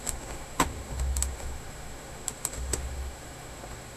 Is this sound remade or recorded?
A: remade